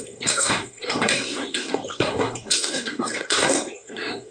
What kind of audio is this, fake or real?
fake